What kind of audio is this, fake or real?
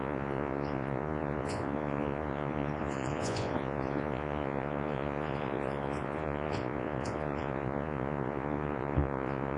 fake